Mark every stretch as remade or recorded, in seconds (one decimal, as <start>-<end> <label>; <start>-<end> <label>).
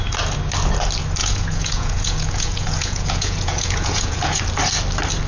0.0-1.2 recorded; 1.2-4.4 remade; 4.4-5.3 recorded